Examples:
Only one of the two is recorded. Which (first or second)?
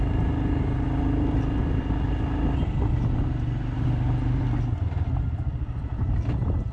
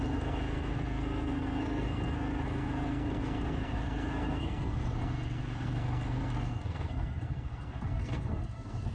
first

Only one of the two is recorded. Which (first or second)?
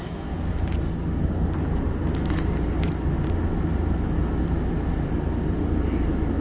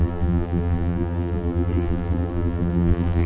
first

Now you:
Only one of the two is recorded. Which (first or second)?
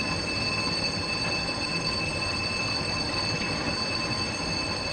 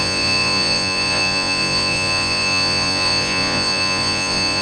first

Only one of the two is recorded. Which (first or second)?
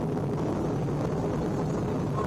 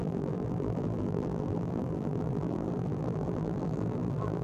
first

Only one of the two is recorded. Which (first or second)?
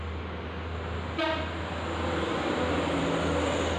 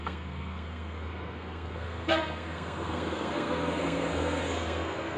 first